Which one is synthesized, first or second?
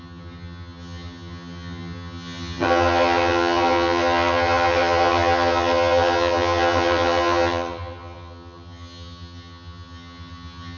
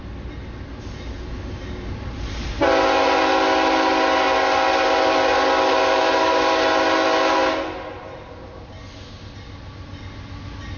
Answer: first